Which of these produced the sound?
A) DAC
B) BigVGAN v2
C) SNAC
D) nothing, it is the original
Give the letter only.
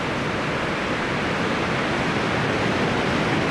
D